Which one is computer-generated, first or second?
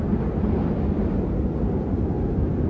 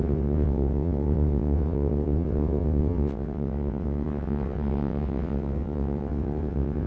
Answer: second